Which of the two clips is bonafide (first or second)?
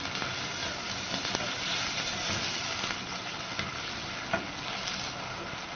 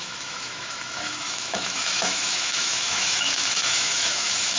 first